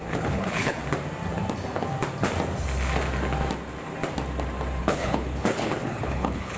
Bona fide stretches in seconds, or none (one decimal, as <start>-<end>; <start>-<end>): 0.8-4.8